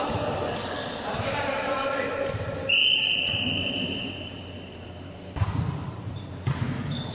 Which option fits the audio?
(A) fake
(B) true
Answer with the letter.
A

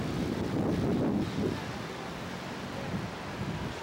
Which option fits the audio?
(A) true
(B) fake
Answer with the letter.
A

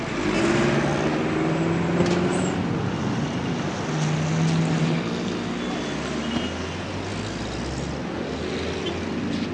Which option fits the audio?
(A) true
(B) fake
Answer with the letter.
A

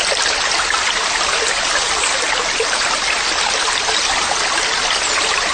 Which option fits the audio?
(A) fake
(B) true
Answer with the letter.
B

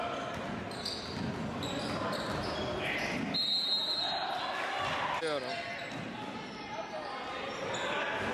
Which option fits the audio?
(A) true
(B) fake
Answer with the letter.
A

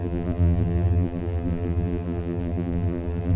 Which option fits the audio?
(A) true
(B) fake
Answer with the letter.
B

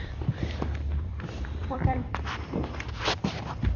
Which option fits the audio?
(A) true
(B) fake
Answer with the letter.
B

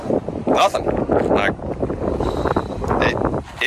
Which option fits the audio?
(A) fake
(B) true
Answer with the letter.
B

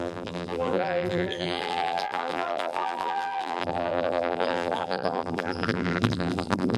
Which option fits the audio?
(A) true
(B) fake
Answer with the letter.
B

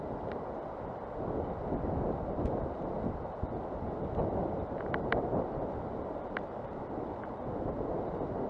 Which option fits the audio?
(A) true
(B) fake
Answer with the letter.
A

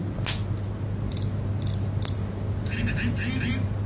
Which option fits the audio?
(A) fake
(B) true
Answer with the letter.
B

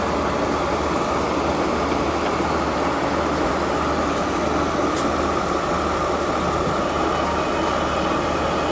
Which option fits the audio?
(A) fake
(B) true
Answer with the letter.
B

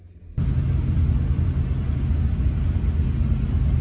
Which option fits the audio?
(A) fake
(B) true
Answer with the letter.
B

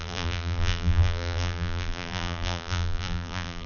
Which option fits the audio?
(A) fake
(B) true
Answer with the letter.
A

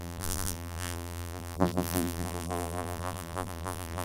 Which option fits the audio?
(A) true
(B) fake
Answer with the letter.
B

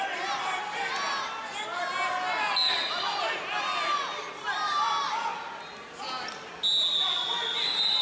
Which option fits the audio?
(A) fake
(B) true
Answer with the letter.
B